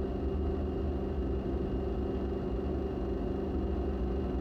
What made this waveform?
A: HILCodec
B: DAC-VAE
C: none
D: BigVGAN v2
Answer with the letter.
C